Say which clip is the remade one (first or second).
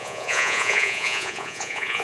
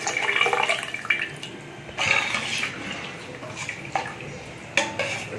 first